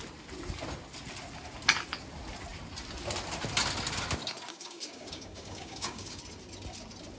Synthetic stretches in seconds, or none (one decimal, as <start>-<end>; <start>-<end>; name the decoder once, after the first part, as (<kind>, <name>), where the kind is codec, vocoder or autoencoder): 4.5-6.2 (codec, DAC)